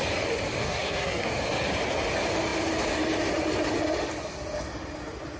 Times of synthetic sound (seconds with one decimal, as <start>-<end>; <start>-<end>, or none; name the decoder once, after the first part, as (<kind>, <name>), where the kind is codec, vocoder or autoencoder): 0.6-1.3 (codec, SNAC)